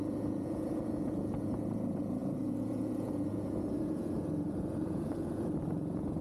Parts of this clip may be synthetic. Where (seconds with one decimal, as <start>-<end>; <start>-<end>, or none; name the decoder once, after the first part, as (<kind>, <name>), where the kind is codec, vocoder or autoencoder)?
0.0-6.2 (vocoder, Vocos)